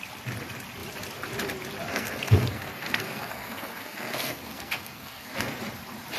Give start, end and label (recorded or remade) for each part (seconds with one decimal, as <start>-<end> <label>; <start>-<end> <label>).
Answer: 0.0-1.9 recorded; 1.9-5.6 remade; 5.6-6.2 recorded